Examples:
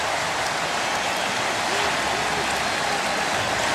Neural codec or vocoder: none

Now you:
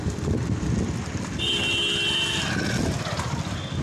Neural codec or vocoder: none